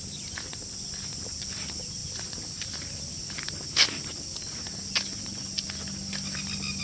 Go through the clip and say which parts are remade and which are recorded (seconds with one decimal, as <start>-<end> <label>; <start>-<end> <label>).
0.0-6.8 recorded